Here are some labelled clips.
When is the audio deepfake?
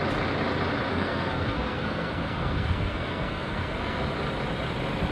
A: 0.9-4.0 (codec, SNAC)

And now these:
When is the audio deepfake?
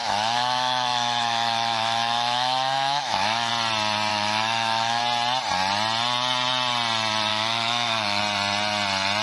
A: 0.0-3.5 (autoencoder, DAC-VAE); 4.1-5.0; 7.3-8.2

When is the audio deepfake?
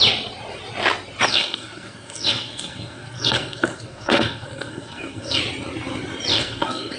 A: 1.3-5.4 (codec, SNAC); 6.3-7.0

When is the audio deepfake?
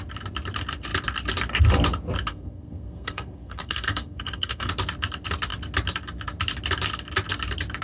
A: 2.3-4.7 (codec, SNAC)